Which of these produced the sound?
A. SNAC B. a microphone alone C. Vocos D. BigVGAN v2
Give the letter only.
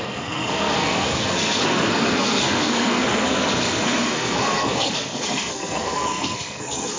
A